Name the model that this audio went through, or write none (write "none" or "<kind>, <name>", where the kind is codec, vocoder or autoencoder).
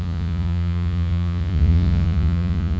vocoder, Vocos